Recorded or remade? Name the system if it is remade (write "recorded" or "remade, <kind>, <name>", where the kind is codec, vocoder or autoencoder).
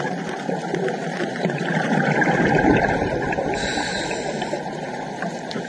remade, vocoder, BigVGAN v2